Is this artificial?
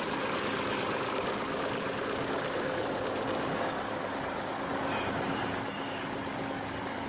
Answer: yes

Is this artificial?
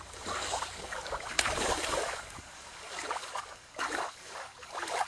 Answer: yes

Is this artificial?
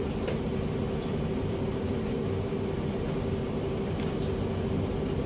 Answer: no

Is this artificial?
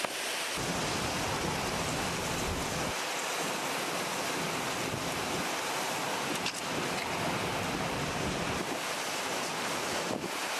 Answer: no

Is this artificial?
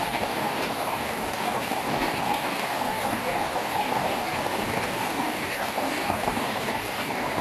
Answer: yes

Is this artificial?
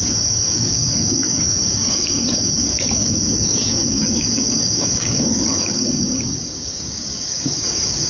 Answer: yes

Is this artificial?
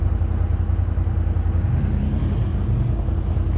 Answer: no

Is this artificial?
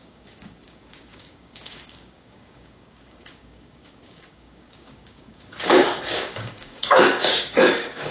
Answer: yes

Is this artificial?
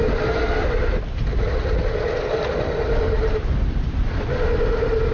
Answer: no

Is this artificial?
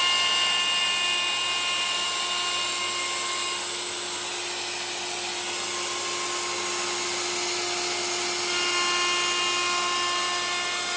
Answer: no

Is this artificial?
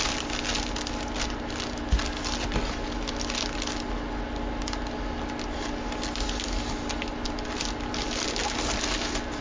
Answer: no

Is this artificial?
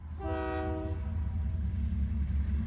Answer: no